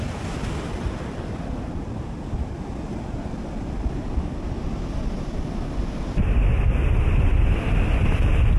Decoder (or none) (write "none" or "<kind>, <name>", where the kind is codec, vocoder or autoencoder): none